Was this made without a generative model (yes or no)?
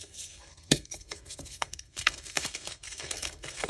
no